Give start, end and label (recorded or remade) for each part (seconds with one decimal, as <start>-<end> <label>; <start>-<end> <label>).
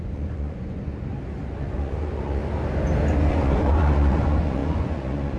0.0-0.9 remade; 0.9-1.5 recorded; 1.5-2.4 remade; 2.4-3.3 recorded; 3.3-5.4 remade